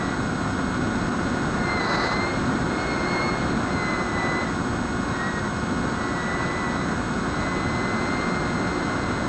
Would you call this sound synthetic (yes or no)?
no